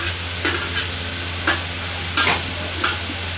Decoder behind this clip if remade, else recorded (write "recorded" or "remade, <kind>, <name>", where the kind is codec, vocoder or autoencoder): recorded